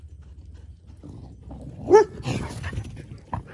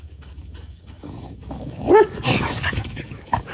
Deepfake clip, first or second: second